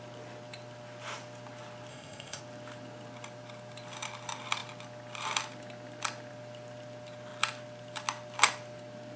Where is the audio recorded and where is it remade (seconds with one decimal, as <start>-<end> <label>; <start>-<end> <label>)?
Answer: 0.0-1.9 recorded; 1.9-2.4 remade; 2.4-9.2 recorded